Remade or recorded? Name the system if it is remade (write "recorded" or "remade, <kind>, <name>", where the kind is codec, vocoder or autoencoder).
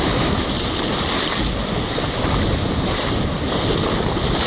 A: recorded